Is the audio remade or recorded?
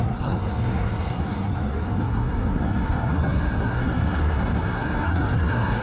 remade